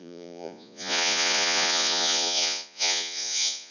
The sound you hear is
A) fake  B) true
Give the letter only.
A